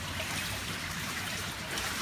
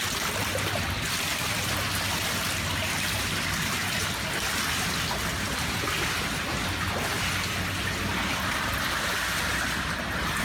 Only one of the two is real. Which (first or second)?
second